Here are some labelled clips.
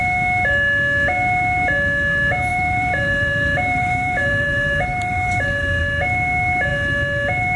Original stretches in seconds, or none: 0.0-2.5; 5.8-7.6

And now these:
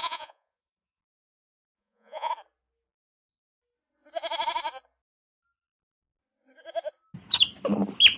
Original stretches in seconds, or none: 1.0-1.6; 2.3-8.2

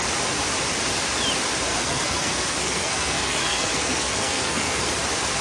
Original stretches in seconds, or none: 0.0-1.7; 4.9-5.4

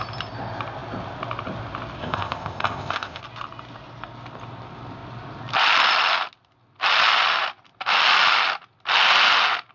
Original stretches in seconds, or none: 0.0-2.0; 3.2-9.7